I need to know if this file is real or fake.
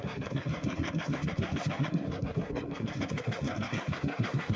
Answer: fake